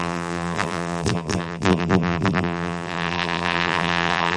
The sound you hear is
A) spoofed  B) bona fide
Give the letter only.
A